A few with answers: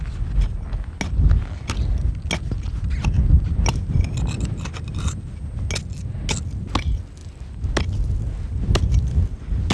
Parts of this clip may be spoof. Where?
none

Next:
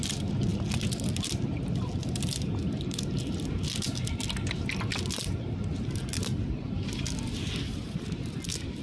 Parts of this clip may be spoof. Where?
none

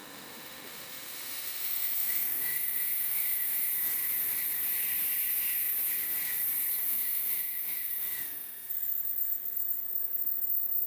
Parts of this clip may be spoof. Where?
0.0-3.7; 6.8-8.7